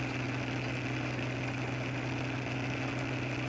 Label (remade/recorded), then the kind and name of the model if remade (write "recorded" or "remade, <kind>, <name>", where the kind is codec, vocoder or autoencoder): recorded